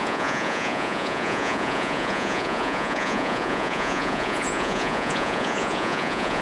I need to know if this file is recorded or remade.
remade